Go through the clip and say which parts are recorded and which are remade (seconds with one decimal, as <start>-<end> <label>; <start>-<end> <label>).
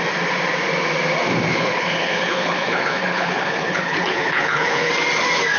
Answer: 0.0-1.5 recorded; 1.5-4.9 remade; 4.9-5.6 recorded